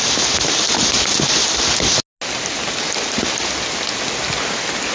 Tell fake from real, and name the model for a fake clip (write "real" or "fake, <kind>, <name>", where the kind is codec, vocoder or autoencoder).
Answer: real